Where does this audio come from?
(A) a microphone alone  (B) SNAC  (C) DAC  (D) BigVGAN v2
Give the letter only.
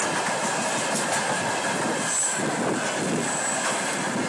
A